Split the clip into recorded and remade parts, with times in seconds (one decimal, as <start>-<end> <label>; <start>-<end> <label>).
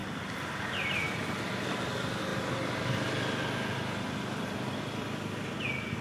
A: 0.0-1.2 remade; 1.2-6.0 recorded